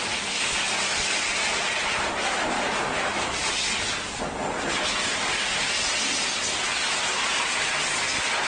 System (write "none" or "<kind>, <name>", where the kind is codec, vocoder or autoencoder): none